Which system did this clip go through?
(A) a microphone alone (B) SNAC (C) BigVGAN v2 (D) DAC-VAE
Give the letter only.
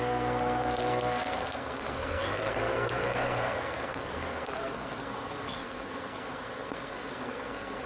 B